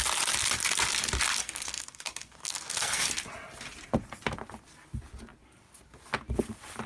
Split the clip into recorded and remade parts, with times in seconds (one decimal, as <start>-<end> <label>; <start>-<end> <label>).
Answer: 0.0-1.4 recorded; 1.4-3.1 remade; 3.1-6.9 recorded